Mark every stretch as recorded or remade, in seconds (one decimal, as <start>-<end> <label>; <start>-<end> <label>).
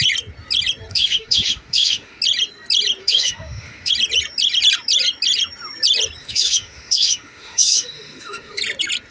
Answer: 0.0-0.9 recorded; 0.9-2.2 remade; 2.2-3.0 recorded; 3.0-3.9 remade; 3.9-6.2 recorded; 6.2-8.6 remade; 8.6-9.1 recorded